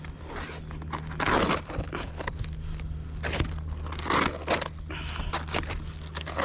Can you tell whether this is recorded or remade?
recorded